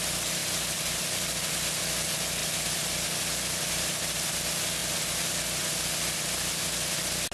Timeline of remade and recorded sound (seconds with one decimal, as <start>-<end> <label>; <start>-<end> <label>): 0.0-7.3 recorded